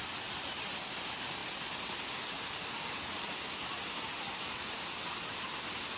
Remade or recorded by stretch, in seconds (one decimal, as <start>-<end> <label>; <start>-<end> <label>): 0.0-6.0 recorded